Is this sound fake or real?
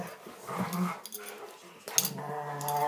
real